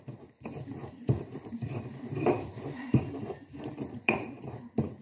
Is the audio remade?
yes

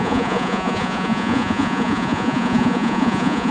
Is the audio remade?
yes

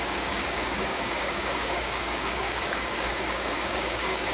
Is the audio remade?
yes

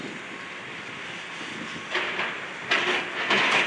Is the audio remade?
no